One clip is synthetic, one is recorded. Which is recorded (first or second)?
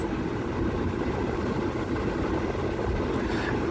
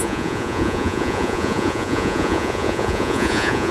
first